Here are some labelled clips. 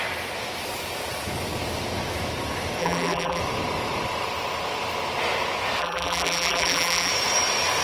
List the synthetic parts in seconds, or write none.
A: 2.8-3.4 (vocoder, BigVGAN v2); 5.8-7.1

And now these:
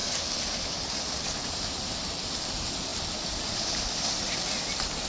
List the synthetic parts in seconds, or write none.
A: none

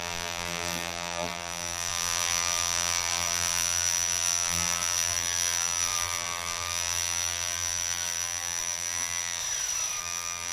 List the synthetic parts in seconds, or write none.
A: 0.0-9.4 (vocoder, BigVGAN v2); 10.0-10.5

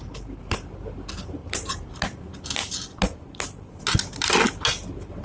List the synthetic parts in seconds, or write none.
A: 1.4-2.0 (vocoder, BigVGAN v2)